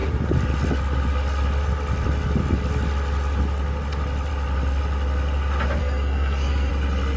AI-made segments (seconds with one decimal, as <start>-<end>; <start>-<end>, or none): 5.8-6.7